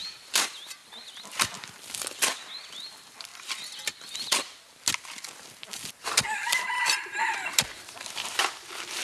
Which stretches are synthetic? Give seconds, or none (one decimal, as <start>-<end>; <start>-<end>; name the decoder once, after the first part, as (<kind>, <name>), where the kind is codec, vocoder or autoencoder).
0.0-0.8 (vocoder, BigVGAN v2); 1.5-3.3; 4.0-9.0

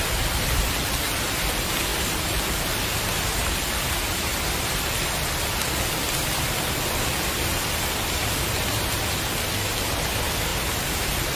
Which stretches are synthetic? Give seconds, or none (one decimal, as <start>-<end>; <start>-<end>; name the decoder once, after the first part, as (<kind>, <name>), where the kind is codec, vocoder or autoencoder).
1.9-4.0 (vocoder, BigVGAN v2); 10.5-11.4

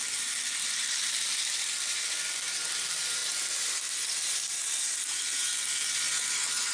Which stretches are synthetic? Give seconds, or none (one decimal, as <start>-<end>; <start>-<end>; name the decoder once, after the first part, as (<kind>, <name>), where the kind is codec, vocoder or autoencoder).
0.9-5.5 (vocoder, BigVGAN v2); 6.3-6.7

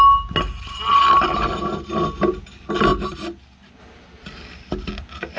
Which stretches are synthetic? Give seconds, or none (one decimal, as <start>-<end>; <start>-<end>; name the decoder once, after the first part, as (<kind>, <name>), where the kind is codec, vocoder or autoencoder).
0.9-1.9 (vocoder, BigVGAN v2)